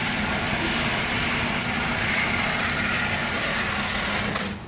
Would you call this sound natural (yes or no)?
yes